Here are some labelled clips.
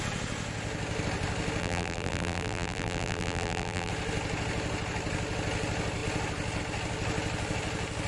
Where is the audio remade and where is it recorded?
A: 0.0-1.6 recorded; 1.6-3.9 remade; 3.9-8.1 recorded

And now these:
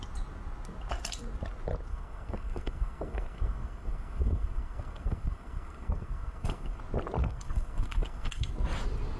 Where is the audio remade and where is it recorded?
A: 0.0-1.9 recorded; 1.9-6.8 remade; 6.8-7.2 recorded; 7.2-8.5 remade; 8.5-9.2 recorded